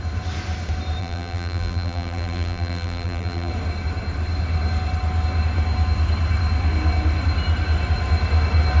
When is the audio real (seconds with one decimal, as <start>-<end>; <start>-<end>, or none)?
0.0-1.0; 3.5-8.8